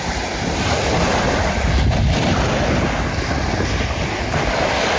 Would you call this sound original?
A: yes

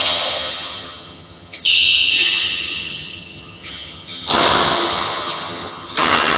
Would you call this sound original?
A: no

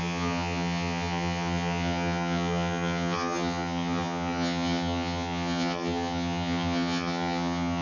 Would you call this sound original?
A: no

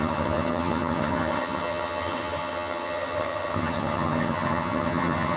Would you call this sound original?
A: no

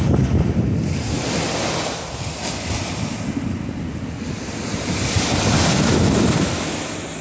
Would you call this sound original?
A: yes